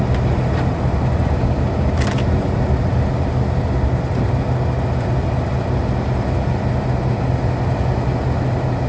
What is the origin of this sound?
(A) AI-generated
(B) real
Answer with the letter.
B